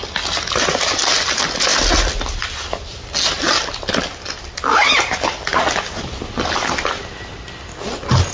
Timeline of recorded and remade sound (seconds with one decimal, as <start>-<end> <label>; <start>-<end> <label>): 0.0-8.3 recorded